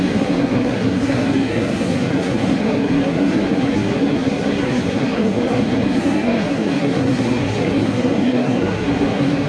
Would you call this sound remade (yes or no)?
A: yes